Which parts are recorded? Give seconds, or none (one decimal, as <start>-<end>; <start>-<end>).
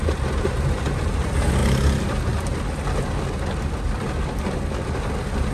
0.0-5.5